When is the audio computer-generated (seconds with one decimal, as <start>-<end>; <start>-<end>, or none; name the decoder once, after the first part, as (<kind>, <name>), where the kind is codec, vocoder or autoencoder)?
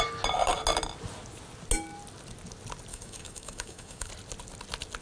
2.9-4.1 (autoencoder, DAC-VAE)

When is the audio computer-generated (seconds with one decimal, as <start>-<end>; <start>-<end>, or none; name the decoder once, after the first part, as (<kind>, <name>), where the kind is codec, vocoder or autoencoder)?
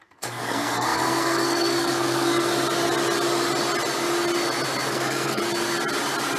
0.0-2.5 (codec, SNAC); 4.9-5.4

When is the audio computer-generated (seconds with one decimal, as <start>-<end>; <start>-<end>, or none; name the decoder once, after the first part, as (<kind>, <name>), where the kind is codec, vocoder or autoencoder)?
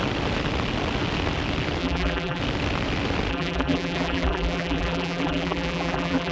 1.8-2.4 (vocoder, BigVGAN v2); 3.3-6.3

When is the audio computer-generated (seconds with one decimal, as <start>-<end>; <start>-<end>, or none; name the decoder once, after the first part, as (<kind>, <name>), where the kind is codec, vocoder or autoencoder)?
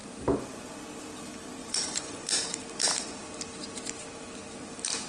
1.6-2.3 (vocoder, Vocos)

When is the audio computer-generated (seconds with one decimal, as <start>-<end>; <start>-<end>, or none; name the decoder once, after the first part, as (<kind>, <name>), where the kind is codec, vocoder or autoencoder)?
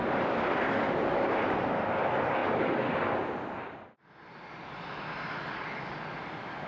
none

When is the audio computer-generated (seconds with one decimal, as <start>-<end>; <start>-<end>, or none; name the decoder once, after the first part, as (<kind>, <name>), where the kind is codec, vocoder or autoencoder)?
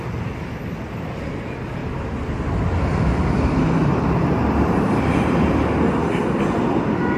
1.8-3.0 (vocoder, BigVGAN v2); 3.8-5.6